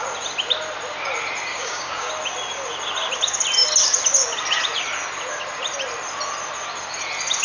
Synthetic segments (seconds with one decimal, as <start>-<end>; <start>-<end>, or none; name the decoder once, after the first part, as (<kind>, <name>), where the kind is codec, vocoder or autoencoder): 1.5-2.1 (codec, DAC)